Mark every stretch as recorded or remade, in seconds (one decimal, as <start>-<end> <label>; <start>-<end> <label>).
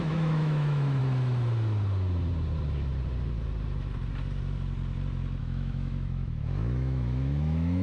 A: 0.0-1.0 remade; 1.0-5.4 recorded; 5.4-7.8 remade